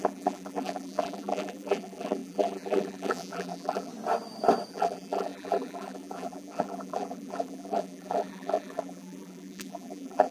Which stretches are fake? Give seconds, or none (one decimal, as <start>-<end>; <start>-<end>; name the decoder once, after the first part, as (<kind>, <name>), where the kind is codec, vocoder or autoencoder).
0.0-3.9 (vocoder, BigVGAN v2); 4.7-10.3